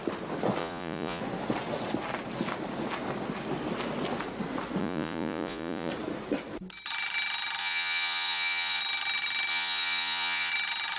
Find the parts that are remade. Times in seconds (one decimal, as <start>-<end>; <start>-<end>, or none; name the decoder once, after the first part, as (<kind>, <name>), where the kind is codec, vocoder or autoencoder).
0.6-1.2 (vocoder, Vocos); 4.8-5.9; 7.6-8.8; 9.5-10.5